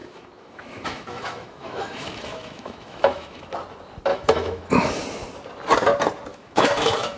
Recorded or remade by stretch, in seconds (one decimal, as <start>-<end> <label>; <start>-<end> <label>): 0.0-3.5 remade; 3.5-4.1 recorded; 4.1-4.9 remade; 4.9-6.3 recorded; 6.3-7.2 remade